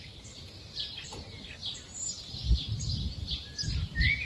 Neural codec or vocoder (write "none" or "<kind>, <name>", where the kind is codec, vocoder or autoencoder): none